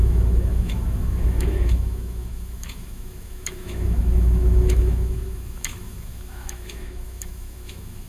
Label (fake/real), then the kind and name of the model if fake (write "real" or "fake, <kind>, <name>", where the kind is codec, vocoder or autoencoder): fake, autoencoder, DAC-VAE